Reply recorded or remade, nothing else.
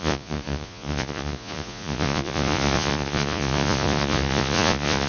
remade